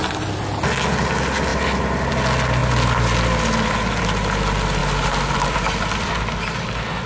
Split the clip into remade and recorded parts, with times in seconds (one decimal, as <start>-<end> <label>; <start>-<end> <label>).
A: 0.0-1.5 recorded; 1.5-2.1 remade; 2.1-4.8 recorded; 4.8-6.1 remade; 6.1-7.1 recorded